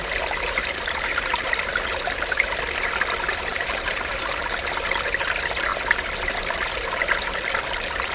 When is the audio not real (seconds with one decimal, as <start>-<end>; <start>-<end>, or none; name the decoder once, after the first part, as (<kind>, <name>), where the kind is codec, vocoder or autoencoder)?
0.6-1.5 (vocoder, BigVGAN v2); 3.5-4.4